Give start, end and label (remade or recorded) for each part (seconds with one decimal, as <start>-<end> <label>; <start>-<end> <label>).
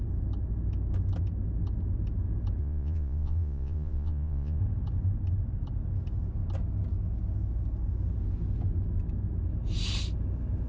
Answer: 0.0-2.6 recorded; 2.6-4.6 remade; 4.6-10.7 recorded